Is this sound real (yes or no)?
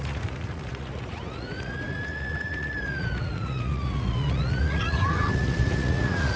no